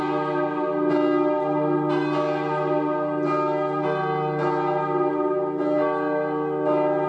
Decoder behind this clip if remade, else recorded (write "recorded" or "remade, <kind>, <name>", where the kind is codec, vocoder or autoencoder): recorded